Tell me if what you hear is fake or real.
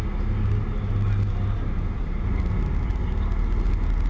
real